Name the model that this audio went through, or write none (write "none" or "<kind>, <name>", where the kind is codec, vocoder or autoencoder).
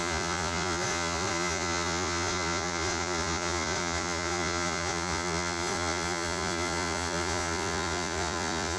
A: vocoder, Vocos